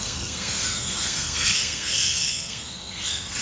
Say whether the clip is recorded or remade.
remade